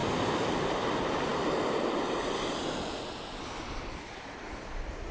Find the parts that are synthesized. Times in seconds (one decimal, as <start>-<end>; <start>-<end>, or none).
none